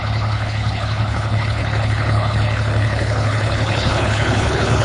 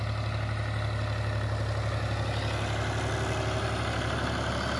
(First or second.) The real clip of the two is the second